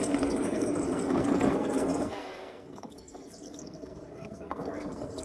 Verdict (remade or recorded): remade